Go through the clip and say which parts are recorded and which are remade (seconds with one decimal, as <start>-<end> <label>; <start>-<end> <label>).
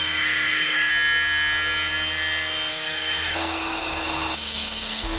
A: 0.0-0.9 remade; 0.9-2.7 recorded; 2.7-5.2 remade